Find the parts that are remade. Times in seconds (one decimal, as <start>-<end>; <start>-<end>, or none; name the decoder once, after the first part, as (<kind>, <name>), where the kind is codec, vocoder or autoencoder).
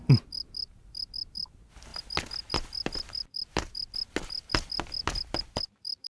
none